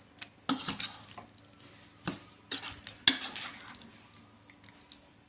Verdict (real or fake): real